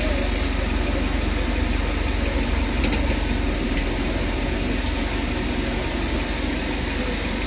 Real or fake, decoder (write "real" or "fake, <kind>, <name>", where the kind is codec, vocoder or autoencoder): real